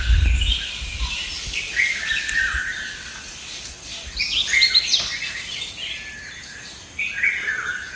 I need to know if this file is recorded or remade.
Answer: recorded